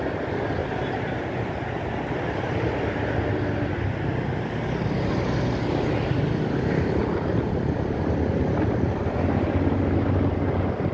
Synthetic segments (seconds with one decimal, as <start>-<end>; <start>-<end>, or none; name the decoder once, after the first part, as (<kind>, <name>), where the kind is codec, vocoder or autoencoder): 0.6-2.4 (vocoder, BigVGAN v2); 7.3-9.7